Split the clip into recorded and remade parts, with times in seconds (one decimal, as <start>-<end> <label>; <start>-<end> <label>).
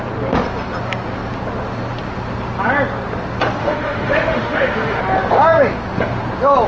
0.0-3.6 recorded; 3.6-5.0 remade; 5.0-6.7 recorded